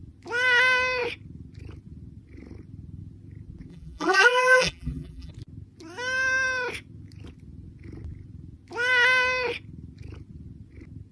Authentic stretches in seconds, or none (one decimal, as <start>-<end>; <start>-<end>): 0.0-3.7; 5.3-11.1